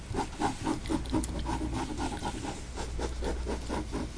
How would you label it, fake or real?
real